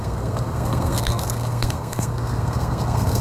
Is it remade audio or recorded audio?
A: remade